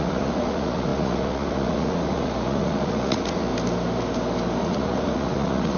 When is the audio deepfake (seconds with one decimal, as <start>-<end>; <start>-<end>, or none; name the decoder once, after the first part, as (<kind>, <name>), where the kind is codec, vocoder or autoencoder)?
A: 0.0-3.5 (vocoder, Vocos); 4.6-5.8